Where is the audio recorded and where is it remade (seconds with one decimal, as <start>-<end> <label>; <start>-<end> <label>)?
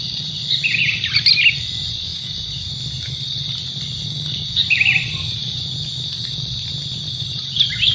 0.0-0.6 remade; 0.6-7.9 recorded